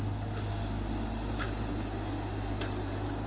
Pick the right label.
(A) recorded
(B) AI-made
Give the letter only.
A